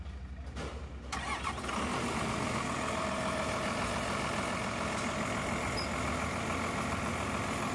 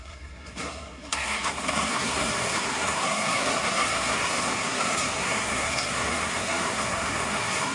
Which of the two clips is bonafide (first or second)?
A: first